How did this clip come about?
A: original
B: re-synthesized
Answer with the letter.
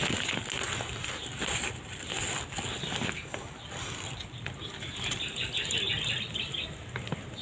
A